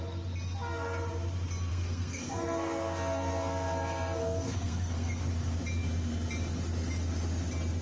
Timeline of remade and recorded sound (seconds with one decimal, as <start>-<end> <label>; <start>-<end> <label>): 0.0-1.7 recorded; 1.7-5.2 remade; 5.2-7.8 recorded